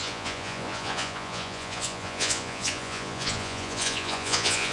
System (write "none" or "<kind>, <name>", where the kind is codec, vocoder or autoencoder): vocoder, Vocos